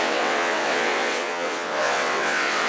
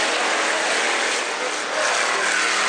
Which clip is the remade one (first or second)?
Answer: first